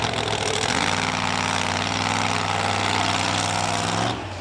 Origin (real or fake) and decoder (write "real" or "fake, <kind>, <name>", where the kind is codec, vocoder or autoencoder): real